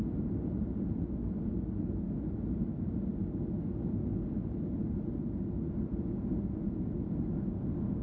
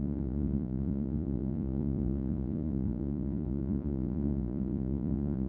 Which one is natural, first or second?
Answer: first